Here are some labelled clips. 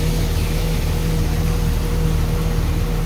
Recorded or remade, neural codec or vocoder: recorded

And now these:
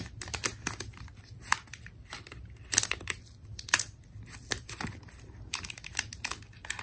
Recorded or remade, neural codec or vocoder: recorded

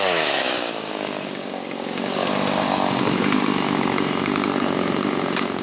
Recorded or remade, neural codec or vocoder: remade, codec, DAC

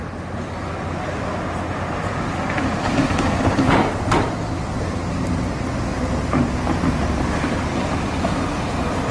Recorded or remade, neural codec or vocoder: recorded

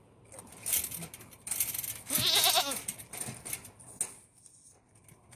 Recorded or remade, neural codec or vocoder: recorded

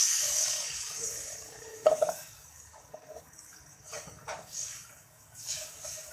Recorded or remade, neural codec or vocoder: remade, codec, DAC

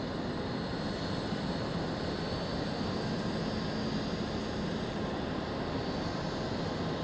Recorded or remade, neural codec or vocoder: recorded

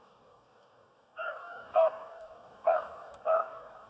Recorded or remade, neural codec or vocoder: remade, codec, DAC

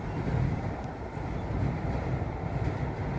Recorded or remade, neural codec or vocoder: recorded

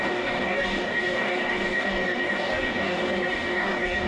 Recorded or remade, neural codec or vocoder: remade, codec, DAC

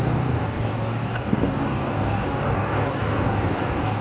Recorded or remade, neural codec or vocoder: remade, codec, DAC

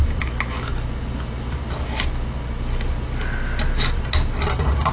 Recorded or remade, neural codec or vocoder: recorded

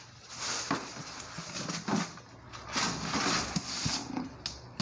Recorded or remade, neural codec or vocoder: recorded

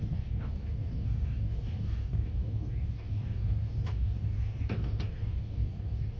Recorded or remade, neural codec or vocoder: remade, codec, DAC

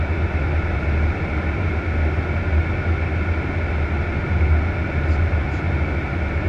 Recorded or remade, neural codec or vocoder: recorded